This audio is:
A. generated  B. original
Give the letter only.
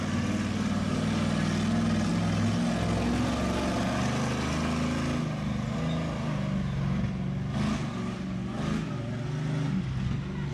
B